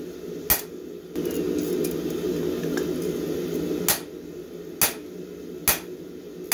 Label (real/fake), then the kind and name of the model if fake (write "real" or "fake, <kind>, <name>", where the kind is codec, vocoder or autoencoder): real